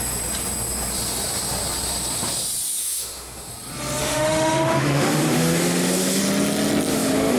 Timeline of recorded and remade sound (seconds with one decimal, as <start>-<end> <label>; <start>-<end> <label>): 0.0-2.8 recorded; 2.8-3.5 remade; 3.5-4.0 recorded; 4.0-6.2 remade; 6.2-6.9 recorded; 6.9-7.4 remade